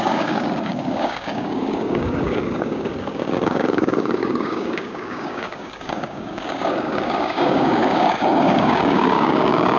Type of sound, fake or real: fake